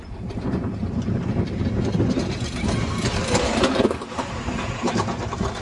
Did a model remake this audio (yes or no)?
yes